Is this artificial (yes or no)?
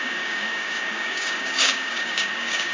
yes